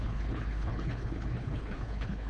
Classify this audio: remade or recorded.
remade